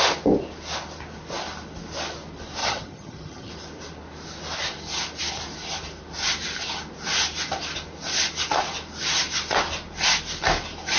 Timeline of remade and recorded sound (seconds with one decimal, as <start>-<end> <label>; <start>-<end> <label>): 0.0-2.6 recorded; 2.6-3.5 remade; 3.5-11.0 recorded